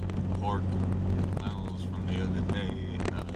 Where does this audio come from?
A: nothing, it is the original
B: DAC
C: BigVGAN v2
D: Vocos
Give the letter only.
A